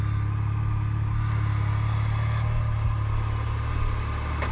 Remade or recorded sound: recorded